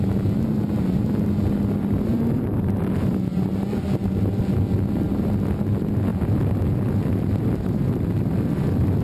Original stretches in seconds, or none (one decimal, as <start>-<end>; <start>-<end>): 0.0-2.1; 2.9-6.1; 8.2-9.0